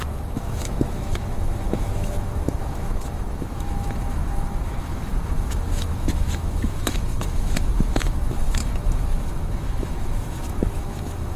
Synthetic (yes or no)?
yes